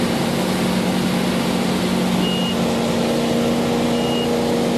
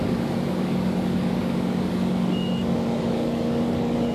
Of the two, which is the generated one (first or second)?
second